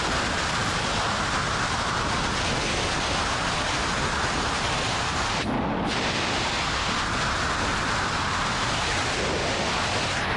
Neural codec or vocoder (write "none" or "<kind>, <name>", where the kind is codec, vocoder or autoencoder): none